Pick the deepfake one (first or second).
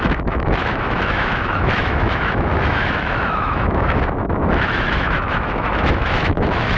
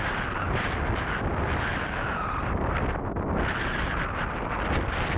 first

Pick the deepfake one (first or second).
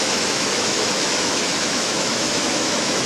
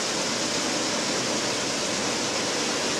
first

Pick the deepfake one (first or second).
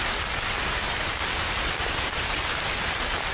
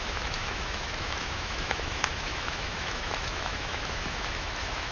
second